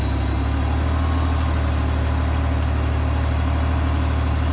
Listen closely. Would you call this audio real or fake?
real